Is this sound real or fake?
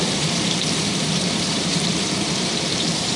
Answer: fake